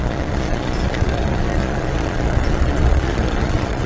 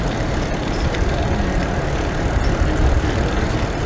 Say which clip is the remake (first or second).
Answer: first